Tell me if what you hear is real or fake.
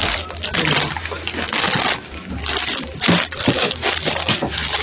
real